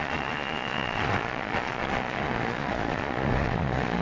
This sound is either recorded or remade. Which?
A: remade